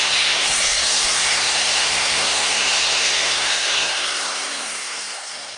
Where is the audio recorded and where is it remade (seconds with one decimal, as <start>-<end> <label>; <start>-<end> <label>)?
0.0-5.6 remade